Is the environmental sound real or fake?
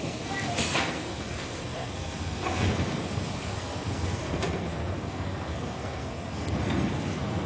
fake